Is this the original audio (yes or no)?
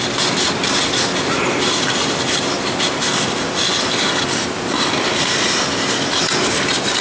yes